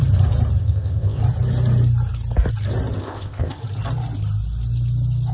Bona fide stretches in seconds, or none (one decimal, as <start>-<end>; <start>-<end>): 0.0-0.6; 1.2-3.0; 3.6-5.3